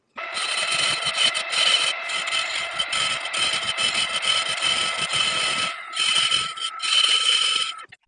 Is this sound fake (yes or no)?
no